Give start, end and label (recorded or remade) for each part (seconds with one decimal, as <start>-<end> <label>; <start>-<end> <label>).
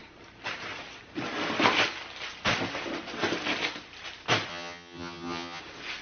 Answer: 0.0-4.5 recorded; 4.5-5.6 remade; 5.6-6.0 recorded